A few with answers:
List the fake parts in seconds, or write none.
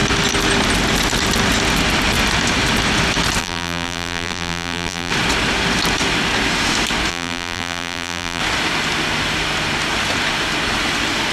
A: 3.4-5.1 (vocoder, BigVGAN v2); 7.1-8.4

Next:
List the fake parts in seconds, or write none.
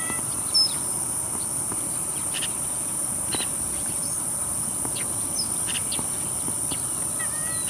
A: 1.5-5.7 (vocoder, BigVGAN v2)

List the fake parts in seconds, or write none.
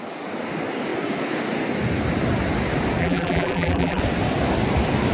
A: 3.0-4.0 (vocoder, BigVGAN v2)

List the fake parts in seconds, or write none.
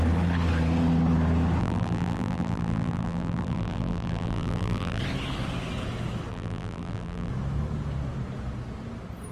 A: 1.6-5.0 (vocoder, BigVGAN v2); 6.3-7.3